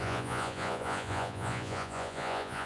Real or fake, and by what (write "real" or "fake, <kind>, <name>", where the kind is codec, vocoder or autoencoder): fake, vocoder, Vocos